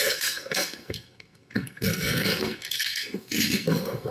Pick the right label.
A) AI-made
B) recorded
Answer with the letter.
A